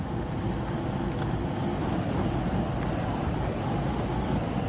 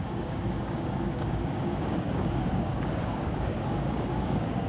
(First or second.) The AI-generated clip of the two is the second